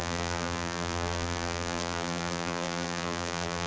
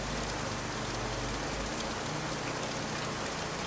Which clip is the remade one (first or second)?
first